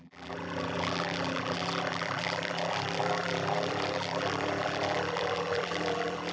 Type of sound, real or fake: fake